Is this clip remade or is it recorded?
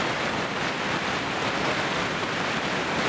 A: remade